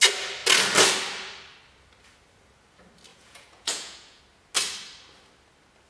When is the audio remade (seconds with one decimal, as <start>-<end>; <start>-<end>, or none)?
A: 3.1-4.2